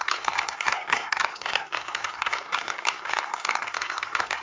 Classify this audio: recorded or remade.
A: remade